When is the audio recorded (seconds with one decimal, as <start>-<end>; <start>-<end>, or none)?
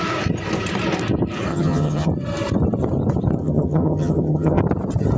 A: 0.0-1.5; 2.1-3.4; 4.6-5.2